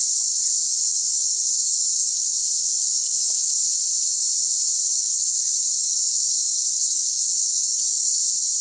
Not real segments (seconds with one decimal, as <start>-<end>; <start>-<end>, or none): 0.6-3.7; 4.9-8.2